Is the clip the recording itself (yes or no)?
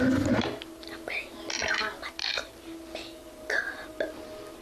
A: yes